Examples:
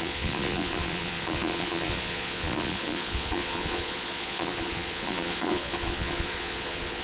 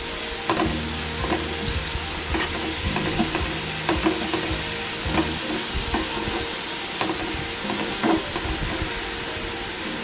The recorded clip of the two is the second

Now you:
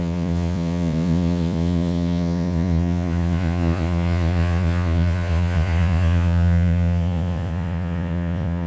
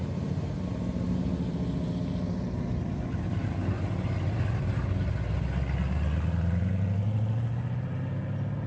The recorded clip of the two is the second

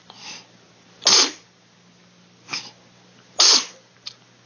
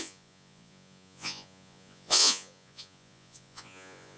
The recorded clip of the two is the first